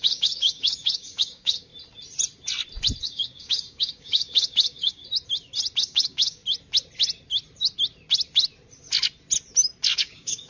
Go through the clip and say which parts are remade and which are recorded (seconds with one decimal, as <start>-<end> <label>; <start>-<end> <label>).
0.0-1.7 remade; 1.7-3.0 recorded; 3.0-5.0 remade; 5.0-5.8 recorded; 5.8-6.4 remade; 6.4-9.9 recorded; 9.9-10.5 remade